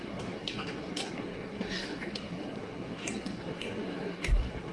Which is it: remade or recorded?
remade